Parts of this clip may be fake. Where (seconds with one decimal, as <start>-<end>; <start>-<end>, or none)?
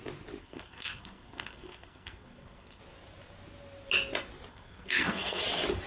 0.4-2.8; 4.5-5.4